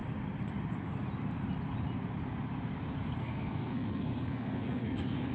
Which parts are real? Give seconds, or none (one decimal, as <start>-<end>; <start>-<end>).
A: 0.0-3.2